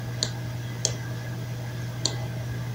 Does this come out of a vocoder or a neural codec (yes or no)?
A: no